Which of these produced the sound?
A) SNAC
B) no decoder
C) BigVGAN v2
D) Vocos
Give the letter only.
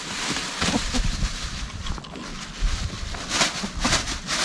B